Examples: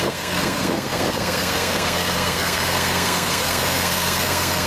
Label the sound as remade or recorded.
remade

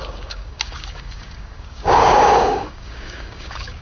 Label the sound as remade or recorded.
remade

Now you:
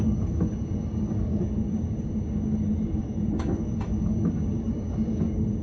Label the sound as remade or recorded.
remade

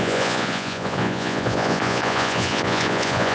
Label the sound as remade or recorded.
remade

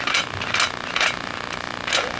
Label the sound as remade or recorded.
recorded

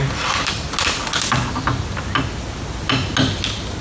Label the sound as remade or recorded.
recorded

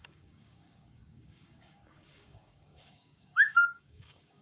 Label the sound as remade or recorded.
remade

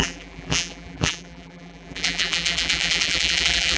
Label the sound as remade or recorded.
remade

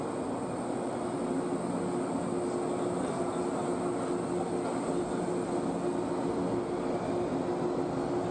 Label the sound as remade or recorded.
recorded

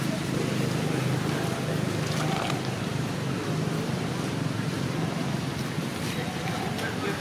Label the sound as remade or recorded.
recorded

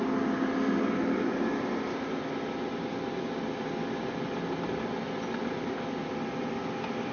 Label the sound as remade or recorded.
recorded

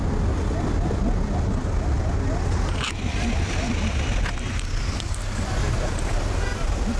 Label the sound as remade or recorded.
recorded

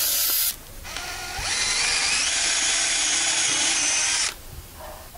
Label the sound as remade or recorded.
recorded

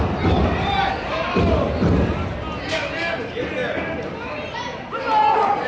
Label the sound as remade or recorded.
recorded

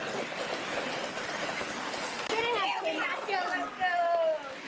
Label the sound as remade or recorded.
recorded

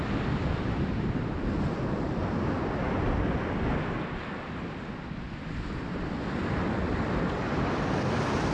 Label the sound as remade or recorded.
recorded